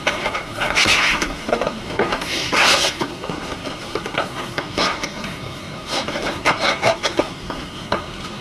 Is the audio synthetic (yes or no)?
yes